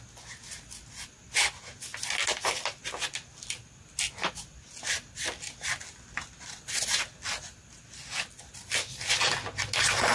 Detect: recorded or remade recorded